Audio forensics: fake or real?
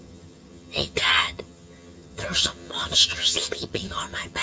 fake